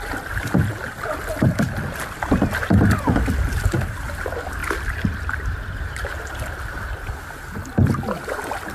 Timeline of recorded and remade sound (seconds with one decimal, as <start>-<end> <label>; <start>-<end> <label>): 0.0-8.7 recorded